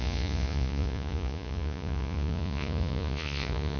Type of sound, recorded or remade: remade